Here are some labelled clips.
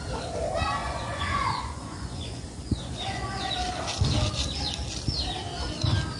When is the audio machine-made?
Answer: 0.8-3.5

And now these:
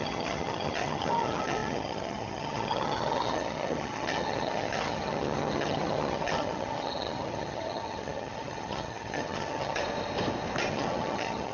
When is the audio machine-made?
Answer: 0.0-9.8; 10.7-11.5

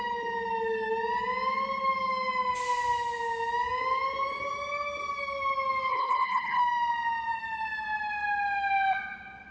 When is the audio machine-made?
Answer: 5.9-6.6

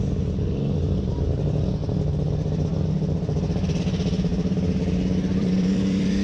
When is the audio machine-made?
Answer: 0.0-1.8; 3.8-4.3; 5.4-6.2

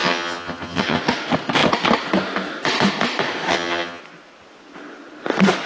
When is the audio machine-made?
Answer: 0.0-1.0; 3.5-4.0

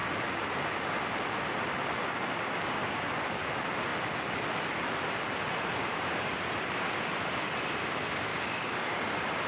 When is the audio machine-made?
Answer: 2.0-3.1; 8.3-9.0

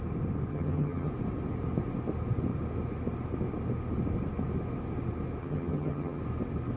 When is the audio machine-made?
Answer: 0.5-1.1; 5.4-6.2

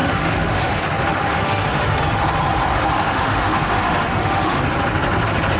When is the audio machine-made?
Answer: 0.0-0.7; 1.3-2.0; 2.7-4.6